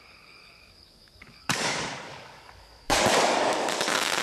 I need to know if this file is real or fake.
fake